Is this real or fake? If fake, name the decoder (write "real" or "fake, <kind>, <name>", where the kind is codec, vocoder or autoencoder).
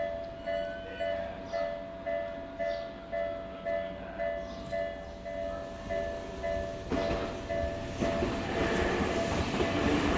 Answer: real